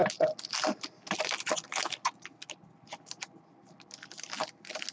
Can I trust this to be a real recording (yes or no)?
yes